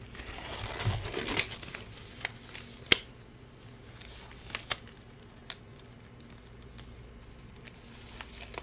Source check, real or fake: real